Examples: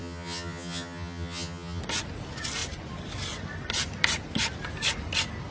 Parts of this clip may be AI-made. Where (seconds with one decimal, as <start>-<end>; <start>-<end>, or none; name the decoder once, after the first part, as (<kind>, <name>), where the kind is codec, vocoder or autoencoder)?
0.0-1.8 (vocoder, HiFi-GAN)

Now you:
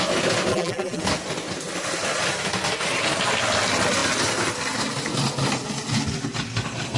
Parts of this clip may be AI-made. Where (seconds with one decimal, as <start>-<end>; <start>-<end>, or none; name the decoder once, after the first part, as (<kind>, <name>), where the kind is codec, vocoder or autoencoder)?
0.5-1.0 (vocoder, BigVGAN v2)

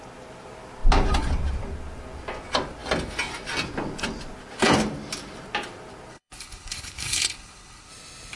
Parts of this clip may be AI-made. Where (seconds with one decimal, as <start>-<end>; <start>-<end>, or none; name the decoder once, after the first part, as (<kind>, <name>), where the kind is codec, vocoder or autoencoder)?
6.1-7.9 (codec, HILCodec)

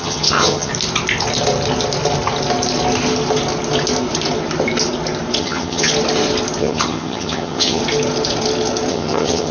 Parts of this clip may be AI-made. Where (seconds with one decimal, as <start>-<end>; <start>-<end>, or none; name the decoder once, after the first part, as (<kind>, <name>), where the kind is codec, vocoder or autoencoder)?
0.0-0.7 (vocoder, HiFi-GAN); 5.4-5.9; 6.6-7.8; 8.9-9.5

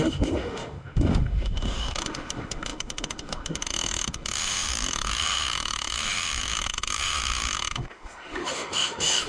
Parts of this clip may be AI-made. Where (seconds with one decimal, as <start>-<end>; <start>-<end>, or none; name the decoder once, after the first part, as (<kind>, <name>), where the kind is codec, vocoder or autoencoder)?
0.0-9.3 (autoencoder, DAC-VAE)